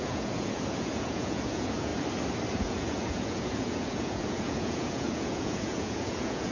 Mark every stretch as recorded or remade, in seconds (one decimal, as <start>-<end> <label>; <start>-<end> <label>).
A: 0.0-1.9 remade; 1.9-2.6 recorded; 2.6-6.5 remade